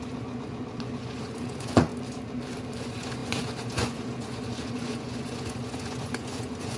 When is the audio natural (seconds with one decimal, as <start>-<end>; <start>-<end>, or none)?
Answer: 1.9-2.8